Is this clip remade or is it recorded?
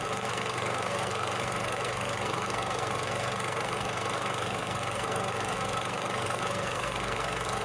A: remade